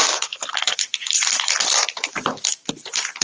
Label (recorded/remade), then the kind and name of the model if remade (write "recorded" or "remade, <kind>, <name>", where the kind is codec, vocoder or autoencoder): remade, vocoder, BigVGAN v2